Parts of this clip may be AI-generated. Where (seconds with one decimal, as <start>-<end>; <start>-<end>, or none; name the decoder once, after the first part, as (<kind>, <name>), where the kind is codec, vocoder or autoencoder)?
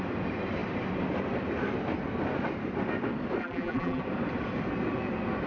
3.4-4.0 (vocoder, BigVGAN v2)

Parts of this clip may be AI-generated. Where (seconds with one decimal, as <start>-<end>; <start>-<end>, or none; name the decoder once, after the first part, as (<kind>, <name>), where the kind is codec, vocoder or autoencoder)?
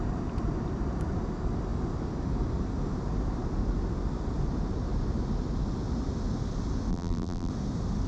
6.9-7.5 (vocoder, BigVGAN v2)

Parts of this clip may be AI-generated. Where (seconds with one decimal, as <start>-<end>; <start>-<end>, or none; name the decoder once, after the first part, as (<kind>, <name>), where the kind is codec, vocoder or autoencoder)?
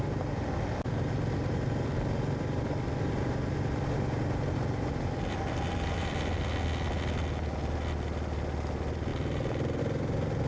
1.4-6.4 (vocoder, BigVGAN v2); 9.1-9.8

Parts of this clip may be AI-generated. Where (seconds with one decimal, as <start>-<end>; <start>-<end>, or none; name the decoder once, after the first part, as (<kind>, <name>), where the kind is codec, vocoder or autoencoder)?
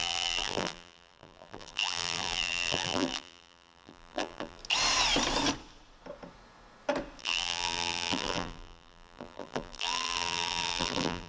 0.0-4.6 (vocoder, BigVGAN v2); 7.2-11.3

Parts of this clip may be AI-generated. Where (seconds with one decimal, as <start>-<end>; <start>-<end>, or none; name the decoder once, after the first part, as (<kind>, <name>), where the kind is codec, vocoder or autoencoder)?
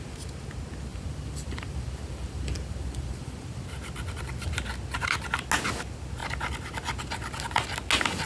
0.9-3.7 (vocoder, BigVGAN v2)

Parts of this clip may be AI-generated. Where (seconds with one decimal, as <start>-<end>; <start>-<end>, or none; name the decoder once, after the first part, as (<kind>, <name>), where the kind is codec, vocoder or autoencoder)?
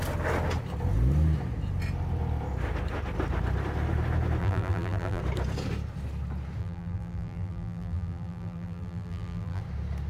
4.4-5.2 (vocoder, BigVGAN v2); 6.6-9.6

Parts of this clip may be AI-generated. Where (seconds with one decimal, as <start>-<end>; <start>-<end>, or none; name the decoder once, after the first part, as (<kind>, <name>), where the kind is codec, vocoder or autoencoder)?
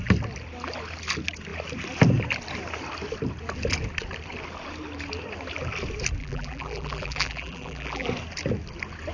6.2-8.1 (vocoder, BigVGAN v2)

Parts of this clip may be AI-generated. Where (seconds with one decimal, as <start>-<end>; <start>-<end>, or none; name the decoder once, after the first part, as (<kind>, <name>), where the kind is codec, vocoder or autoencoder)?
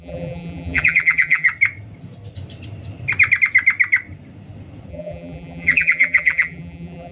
0.0-1.5 (vocoder, BigVGAN v2); 4.9-7.1